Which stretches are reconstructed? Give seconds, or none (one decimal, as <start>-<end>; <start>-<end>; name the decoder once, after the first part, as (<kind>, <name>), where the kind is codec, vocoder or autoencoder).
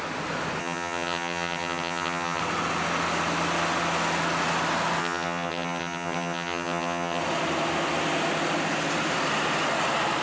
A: 0.6-2.4 (vocoder, HiFi-GAN); 5.0-7.2